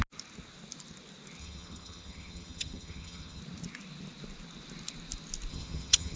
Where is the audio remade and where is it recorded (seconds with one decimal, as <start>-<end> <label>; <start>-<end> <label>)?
0.0-1.4 recorded; 1.4-3.4 remade; 3.4-5.5 recorded; 5.5-6.2 remade